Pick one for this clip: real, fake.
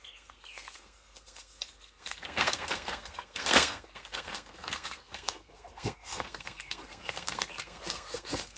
fake